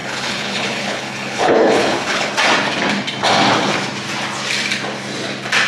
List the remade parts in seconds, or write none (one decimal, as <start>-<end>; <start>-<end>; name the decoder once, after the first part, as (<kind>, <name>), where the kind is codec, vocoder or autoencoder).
0.0-2.3 (codec, HILCodec)

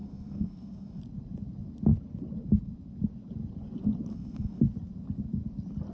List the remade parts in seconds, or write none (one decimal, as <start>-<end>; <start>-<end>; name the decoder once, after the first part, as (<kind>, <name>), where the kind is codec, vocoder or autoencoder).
0.0-1.0 (codec, SNAC); 4.1-4.6